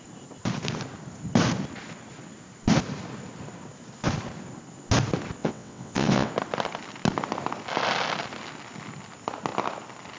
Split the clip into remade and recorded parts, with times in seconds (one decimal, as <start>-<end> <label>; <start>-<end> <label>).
0.0-5.4 recorded; 5.4-6.3 remade; 6.3-10.2 recorded